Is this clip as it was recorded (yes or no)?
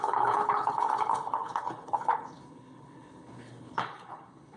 no